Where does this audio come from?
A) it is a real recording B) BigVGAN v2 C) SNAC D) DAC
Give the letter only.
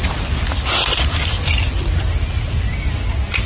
A